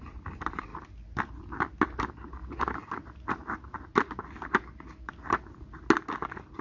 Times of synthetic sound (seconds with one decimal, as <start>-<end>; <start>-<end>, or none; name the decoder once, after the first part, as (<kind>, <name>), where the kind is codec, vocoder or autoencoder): none